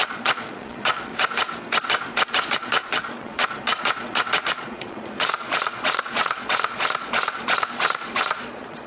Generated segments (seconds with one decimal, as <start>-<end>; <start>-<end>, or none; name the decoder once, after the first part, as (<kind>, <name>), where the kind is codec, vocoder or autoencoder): 0.0-1.1 (vocoder, Vocos); 2.4-8.9